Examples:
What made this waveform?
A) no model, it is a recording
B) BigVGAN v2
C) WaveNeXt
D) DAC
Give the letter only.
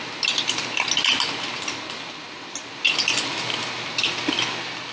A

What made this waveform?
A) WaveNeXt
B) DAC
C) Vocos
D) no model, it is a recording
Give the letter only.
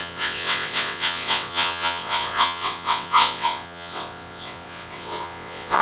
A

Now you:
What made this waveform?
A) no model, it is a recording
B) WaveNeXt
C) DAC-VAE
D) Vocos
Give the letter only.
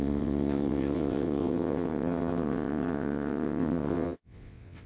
B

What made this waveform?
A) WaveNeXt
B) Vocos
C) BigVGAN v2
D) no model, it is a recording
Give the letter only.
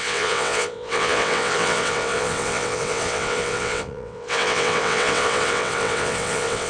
A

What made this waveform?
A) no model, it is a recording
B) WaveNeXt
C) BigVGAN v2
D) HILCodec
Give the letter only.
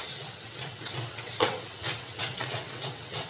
B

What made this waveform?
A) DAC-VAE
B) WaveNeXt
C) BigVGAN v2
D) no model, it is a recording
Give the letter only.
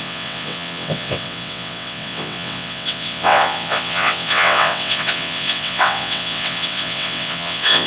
B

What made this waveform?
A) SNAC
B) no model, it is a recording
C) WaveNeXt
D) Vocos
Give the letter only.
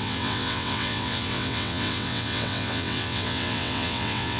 C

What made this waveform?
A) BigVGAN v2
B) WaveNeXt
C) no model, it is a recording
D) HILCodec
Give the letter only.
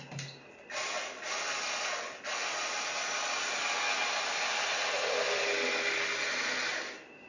C